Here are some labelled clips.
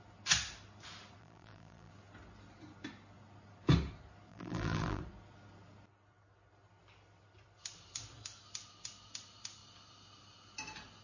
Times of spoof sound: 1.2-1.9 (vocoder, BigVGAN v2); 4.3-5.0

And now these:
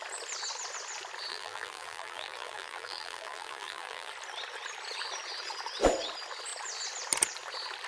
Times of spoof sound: 1.3-4.1 (vocoder, BigVGAN v2)

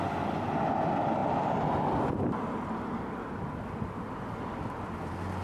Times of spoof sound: none

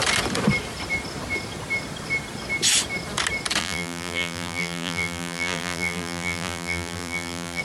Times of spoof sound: 3.6-7.6 (vocoder, BigVGAN v2)

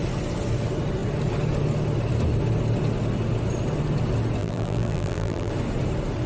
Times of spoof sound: 4.4-5.5 (vocoder, BigVGAN v2)

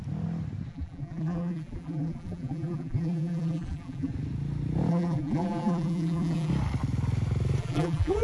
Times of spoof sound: 0.7-4.1 (vocoder, BigVGAN v2); 4.9-6.5; 7.6-8.2

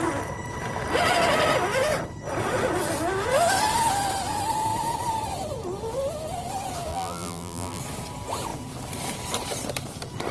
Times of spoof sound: 6.9-7.8 (vocoder, BigVGAN v2)